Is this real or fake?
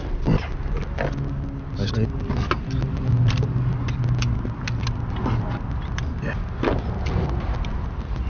real